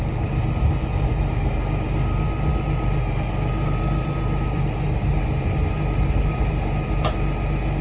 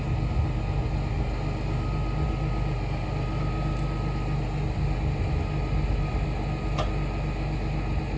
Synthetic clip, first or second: first